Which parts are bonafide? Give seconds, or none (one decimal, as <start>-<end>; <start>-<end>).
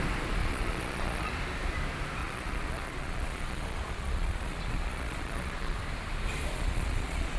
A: 0.0-0.4; 1.3-2.2; 5.8-6.5